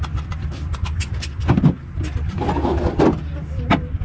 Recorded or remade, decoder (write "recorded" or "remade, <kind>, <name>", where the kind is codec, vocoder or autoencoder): recorded